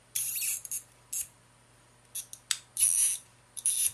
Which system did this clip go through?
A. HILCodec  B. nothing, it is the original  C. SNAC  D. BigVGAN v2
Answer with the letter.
B